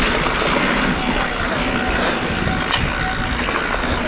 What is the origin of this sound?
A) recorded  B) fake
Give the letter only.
A